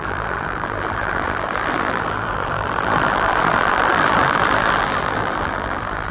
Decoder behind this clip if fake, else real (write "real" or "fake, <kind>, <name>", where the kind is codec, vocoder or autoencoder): fake, vocoder, BigVGAN v2